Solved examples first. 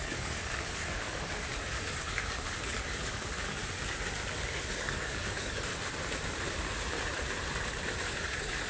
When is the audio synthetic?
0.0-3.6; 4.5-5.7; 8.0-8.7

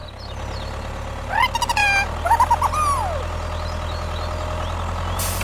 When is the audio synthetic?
none

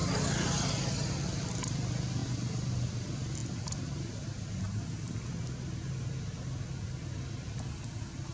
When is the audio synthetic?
none

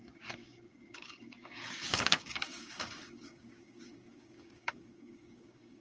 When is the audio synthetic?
0.0-5.8

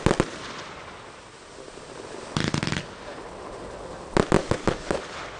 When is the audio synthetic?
4.4-5.0